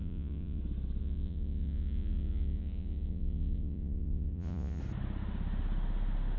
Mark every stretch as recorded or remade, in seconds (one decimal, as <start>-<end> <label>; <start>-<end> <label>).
0.0-0.6 remade; 0.6-1.0 recorded; 1.0-4.8 remade; 4.8-6.4 recorded